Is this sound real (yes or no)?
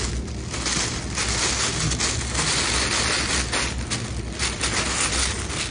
yes